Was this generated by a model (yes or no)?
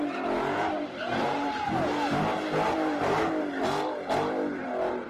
yes